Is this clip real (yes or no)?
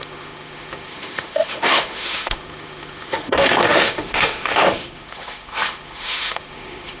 no